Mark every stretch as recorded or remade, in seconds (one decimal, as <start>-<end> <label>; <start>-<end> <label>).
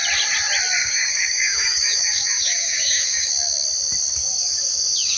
0.0-0.8 recorded; 0.8-3.3 remade; 3.3-4.2 recorded; 4.2-5.2 remade